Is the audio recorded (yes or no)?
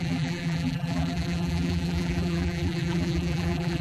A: no